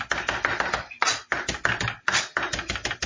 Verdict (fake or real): real